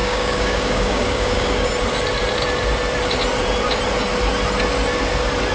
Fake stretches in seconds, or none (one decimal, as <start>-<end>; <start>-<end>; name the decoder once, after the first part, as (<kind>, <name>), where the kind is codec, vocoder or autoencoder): 0.0-1.7 (codec, DAC)